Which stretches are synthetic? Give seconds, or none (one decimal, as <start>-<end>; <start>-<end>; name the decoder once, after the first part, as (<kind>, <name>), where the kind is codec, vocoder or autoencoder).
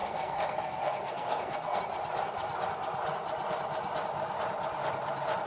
0.0-1.8 (codec, SNAC)